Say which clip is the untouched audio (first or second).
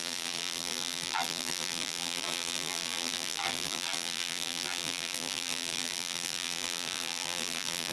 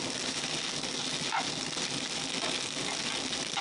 second